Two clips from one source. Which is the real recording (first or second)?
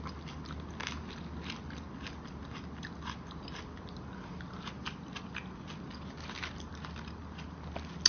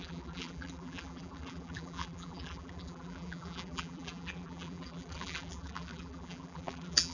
first